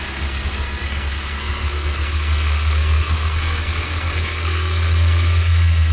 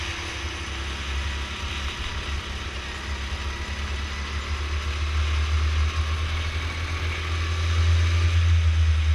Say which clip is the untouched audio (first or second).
second